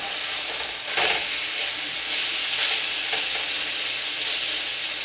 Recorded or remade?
recorded